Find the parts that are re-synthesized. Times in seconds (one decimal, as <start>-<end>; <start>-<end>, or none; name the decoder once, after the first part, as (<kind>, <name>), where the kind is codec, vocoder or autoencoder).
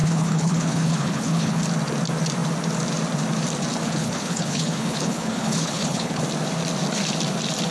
0.0-1.6 (codec, HILCodec); 3.8-6.2